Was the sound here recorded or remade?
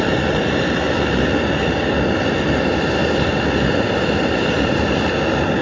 recorded